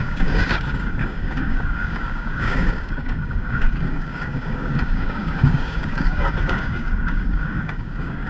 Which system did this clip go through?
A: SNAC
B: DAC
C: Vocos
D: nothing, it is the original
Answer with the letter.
B